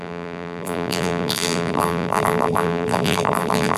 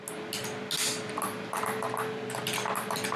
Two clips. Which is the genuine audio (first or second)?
second